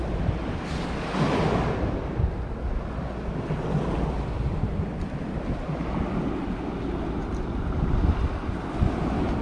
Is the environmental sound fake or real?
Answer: real